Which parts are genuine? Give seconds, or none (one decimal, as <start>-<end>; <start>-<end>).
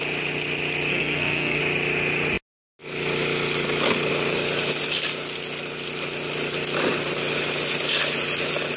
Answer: 0.0-0.9; 1.6-8.8